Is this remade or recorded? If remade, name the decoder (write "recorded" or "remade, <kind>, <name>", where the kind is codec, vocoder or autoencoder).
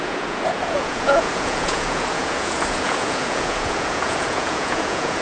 remade, vocoder, Vocos